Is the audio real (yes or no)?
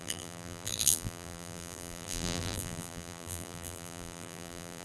no